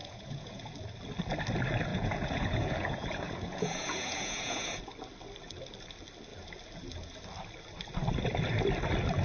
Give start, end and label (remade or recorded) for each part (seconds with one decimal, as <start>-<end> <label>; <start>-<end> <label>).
0.0-0.7 remade; 0.7-1.9 recorded; 1.9-4.9 remade; 4.9-9.2 recorded